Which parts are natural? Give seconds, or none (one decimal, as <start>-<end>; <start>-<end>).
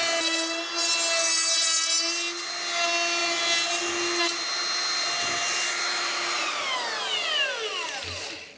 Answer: 0.0-8.6